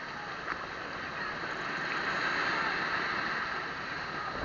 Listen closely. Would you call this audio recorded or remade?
recorded